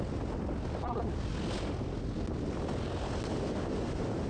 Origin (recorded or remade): recorded